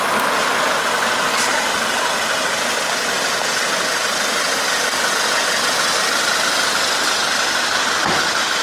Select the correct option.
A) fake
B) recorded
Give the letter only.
B